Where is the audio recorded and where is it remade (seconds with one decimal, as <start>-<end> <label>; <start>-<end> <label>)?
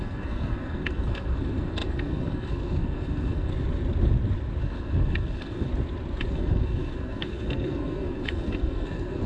0.0-3.5 remade; 3.5-4.6 recorded; 4.6-5.7 remade; 5.7-6.3 recorded; 6.3-9.3 remade